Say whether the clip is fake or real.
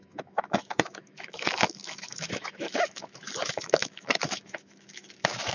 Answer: fake